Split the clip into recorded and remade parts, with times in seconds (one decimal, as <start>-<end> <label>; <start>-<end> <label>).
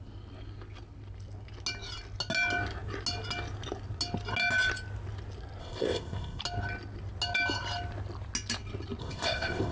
0.0-5.6 recorded; 5.6-6.4 remade; 6.4-9.0 recorded; 9.0-9.7 remade